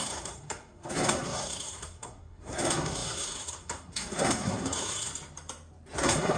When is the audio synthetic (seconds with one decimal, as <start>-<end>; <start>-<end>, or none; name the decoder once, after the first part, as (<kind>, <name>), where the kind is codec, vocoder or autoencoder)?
0.0-5.1 (codec, SNAC); 6.0-6.4